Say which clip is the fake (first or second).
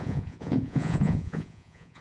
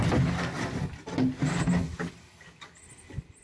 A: first